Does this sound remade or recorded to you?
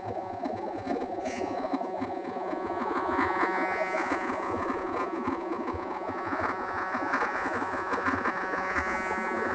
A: remade